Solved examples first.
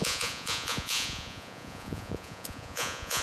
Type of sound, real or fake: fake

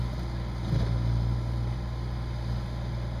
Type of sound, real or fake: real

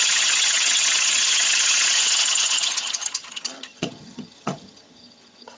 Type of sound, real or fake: fake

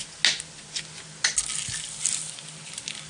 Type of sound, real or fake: real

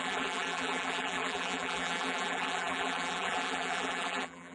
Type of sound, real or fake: fake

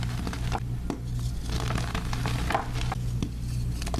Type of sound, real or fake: real